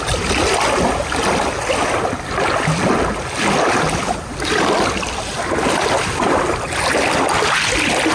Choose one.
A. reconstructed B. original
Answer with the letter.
B